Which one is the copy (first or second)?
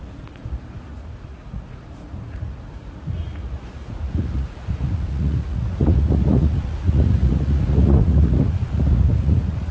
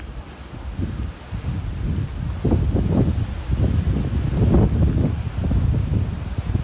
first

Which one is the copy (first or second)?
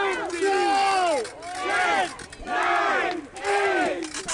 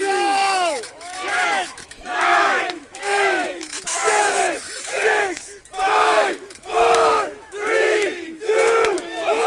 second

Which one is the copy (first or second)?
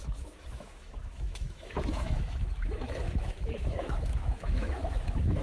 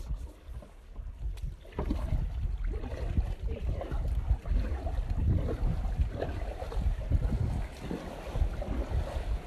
first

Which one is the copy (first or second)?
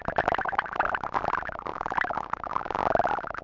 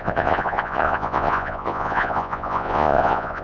second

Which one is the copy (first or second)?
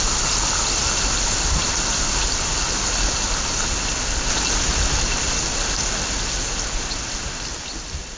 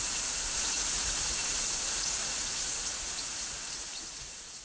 second